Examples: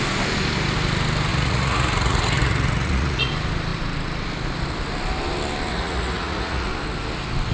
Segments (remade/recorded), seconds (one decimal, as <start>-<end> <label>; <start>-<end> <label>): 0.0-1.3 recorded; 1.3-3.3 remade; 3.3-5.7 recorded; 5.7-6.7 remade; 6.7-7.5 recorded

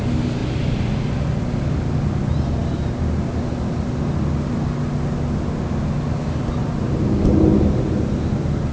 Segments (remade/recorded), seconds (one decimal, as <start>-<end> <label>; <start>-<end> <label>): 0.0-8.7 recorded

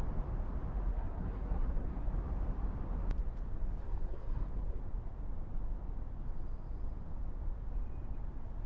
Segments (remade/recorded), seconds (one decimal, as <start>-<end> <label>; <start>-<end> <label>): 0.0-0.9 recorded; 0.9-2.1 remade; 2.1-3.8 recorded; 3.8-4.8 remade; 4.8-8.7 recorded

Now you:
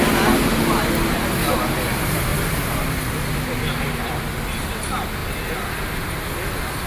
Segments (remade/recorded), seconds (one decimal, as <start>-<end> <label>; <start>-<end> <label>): 0.0-6.9 recorded

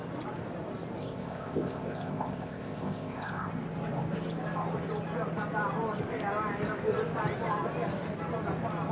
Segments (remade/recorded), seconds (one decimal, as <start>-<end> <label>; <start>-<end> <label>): 0.0-1.0 recorded; 1.0-3.5 remade; 3.5-8.9 recorded